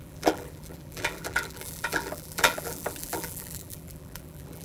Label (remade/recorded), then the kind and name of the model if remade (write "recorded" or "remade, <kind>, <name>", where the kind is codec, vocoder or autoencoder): remade, vocoder, BigVGAN v2